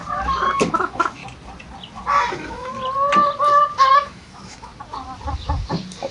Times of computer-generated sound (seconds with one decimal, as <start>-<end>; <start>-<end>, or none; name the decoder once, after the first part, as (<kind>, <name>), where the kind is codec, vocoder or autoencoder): 0.7-1.2 (autoencoder, DAC-VAE); 2.3-2.7; 3.9-4.7